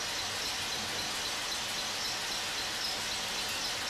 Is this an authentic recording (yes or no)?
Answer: yes